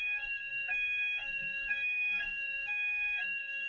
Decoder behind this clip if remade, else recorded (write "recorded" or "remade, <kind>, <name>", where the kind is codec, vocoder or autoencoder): remade, codec, SNAC